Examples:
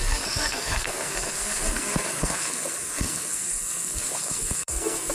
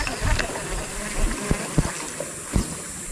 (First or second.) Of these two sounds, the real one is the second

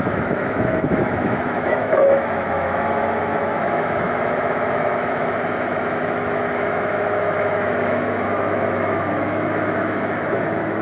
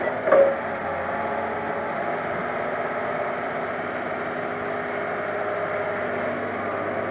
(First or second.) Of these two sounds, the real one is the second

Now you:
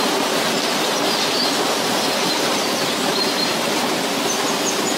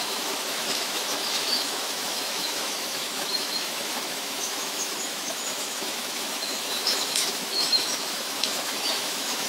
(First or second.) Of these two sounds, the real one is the first